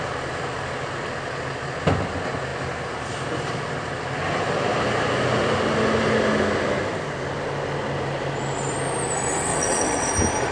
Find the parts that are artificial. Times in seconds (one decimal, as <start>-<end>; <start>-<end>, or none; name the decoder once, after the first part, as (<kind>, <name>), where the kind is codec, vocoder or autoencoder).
9.5-10.1 (vocoder, WaveNeXt)